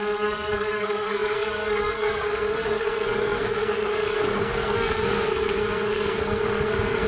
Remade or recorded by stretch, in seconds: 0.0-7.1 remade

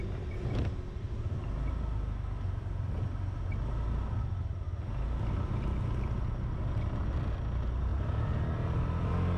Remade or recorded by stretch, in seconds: 0.0-9.4 recorded

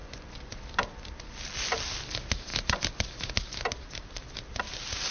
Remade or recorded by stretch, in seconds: 0.0-0.6 remade; 0.6-5.1 recorded

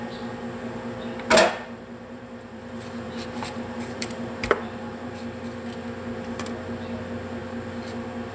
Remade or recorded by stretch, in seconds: 0.0-1.6 recorded; 1.6-5.1 remade; 5.1-8.3 recorded

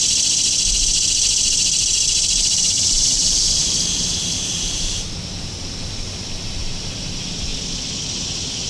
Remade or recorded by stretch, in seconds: 0.0-2.4 recorded; 2.4-6.2 remade; 6.2-8.7 recorded

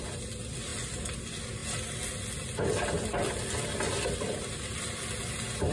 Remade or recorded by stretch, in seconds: 0.0-5.7 recorded

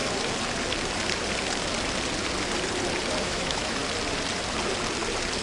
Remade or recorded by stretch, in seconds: 0.0-3.2 recorded; 3.2-3.8 remade; 3.8-5.4 recorded

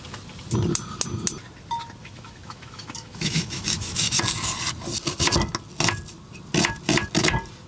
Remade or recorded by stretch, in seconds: 0.0-2.0 recorded; 2.0-4.2 remade; 4.2-7.7 recorded